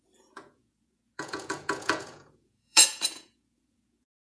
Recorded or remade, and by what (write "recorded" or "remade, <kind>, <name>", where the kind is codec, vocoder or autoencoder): remade, vocoder, Vocos